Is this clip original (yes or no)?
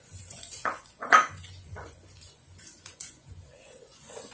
no